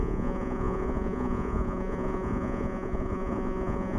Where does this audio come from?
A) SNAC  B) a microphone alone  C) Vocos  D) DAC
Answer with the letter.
C